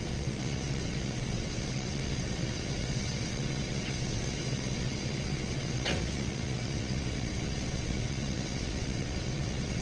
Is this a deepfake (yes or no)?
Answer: yes